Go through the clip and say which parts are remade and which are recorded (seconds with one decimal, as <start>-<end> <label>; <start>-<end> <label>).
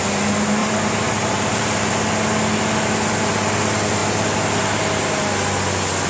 0.0-0.6 recorded; 0.6-1.9 remade; 1.9-6.1 recorded